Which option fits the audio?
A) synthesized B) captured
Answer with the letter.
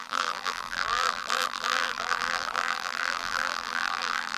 A